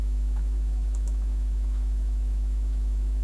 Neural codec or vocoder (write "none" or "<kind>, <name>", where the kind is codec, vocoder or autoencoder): autoencoder, DAC-VAE